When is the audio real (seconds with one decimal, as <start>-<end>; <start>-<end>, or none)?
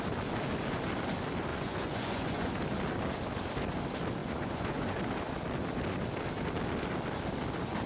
0.0-1.5; 2.5-4.2; 5.0-7.9